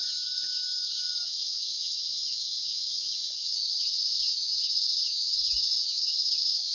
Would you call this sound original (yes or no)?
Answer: no